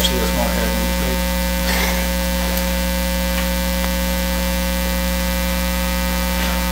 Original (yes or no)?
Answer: yes